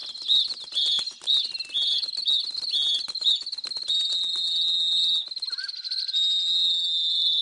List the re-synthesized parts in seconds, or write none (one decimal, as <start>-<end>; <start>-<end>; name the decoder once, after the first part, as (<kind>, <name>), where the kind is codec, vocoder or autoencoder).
none